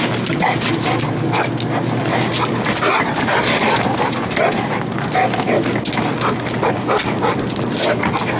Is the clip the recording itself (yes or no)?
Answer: yes